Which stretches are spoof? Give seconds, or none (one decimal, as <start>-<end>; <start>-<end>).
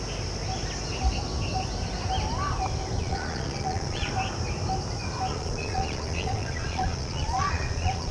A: 3.0-4.1; 5.3-8.1